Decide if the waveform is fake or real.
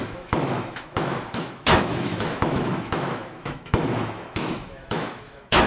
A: fake